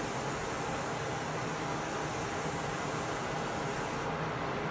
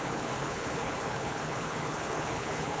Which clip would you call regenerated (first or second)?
second